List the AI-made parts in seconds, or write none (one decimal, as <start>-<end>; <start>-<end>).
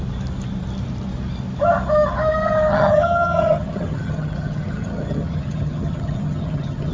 2.7-6.9